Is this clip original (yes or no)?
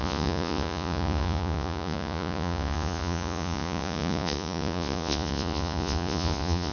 no